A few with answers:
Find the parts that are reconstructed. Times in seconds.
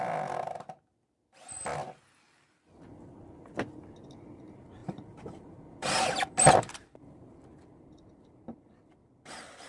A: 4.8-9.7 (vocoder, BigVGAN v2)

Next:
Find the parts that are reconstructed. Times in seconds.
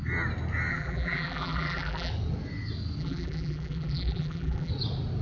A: 0.7-2.1 (vocoder, BigVGAN v2); 3.0-4.7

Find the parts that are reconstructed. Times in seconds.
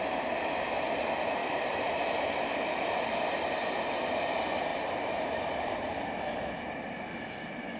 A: 1.4-4.3 (vocoder, BigVGAN v2); 4.7-6.0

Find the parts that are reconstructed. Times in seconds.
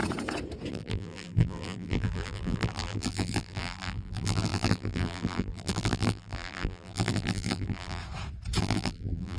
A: 0.7-8.0 (vocoder, BigVGAN v2); 8.6-9.4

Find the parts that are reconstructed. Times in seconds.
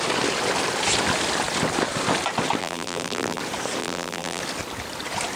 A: 2.6-3.4 (vocoder, BigVGAN v2); 3.8-4.4